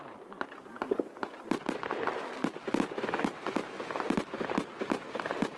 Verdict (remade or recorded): recorded